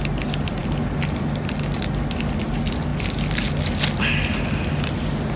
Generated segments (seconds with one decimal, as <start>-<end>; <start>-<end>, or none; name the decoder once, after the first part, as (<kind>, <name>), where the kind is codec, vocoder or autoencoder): none